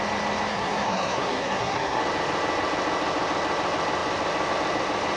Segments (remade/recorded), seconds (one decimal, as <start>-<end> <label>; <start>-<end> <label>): 0.0-0.5 recorded; 0.5-2.0 remade; 2.0-5.2 recorded